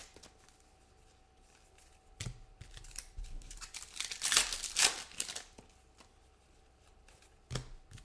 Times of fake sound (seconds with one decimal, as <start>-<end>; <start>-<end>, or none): none

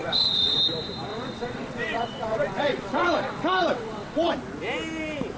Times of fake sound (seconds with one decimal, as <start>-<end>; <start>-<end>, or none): 0.0-0.6; 1.1-4.3

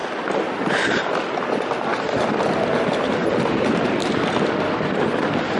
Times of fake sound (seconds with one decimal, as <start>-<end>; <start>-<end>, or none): none

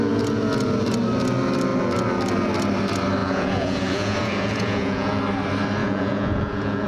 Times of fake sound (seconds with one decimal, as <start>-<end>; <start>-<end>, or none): 3.2-5.2; 5.8-6.9

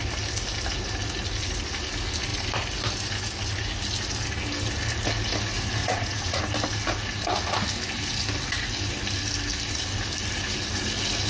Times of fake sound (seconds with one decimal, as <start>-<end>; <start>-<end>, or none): 5.8-6.4

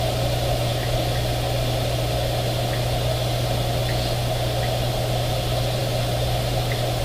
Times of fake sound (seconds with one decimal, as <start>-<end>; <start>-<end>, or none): none

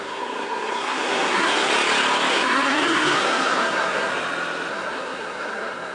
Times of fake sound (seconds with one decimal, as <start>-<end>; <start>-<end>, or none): 0.0-1.7; 2.3-4.1; 4.7-5.9